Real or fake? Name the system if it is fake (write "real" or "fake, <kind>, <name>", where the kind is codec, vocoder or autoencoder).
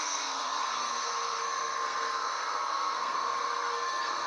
fake, codec, SNAC